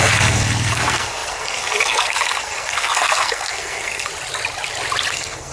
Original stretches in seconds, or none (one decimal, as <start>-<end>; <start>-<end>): 4.1-5.1